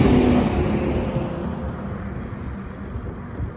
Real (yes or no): yes